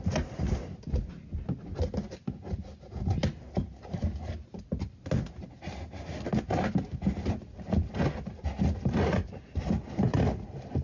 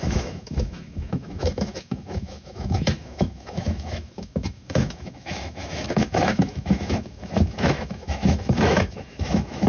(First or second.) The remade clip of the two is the second